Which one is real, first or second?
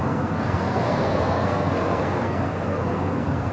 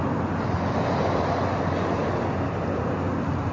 second